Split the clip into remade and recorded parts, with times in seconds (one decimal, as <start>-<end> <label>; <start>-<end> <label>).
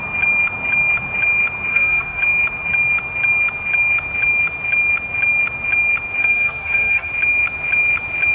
0.0-1.7 recorded; 1.7-2.2 remade; 2.2-6.2 recorded; 6.2-7.1 remade; 7.1-8.3 recorded